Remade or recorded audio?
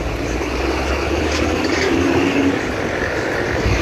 remade